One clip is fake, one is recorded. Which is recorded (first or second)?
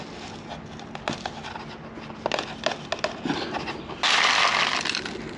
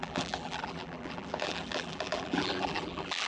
first